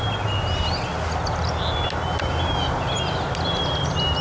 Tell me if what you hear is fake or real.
real